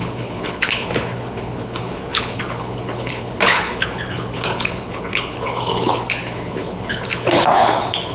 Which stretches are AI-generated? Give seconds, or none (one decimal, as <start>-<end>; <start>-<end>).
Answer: 0.0-8.1